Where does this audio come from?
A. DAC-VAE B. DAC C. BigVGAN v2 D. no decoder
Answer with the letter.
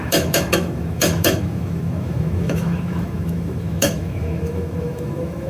A